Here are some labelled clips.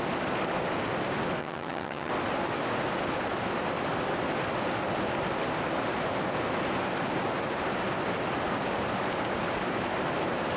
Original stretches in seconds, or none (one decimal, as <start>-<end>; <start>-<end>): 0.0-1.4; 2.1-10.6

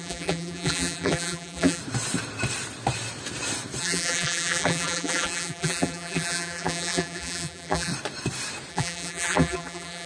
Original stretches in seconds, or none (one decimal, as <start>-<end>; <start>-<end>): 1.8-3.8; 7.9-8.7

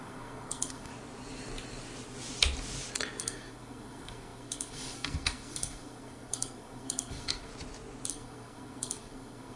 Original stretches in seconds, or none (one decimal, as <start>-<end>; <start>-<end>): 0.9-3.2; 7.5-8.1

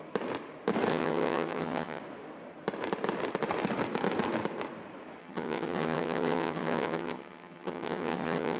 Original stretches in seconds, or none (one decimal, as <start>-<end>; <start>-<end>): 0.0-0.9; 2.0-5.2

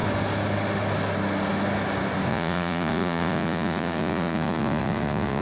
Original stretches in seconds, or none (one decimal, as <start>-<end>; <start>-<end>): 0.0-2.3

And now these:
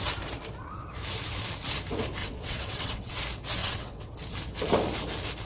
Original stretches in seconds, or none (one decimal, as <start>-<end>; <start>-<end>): 0.0-2.2; 3.2-3.6; 4.1-5.5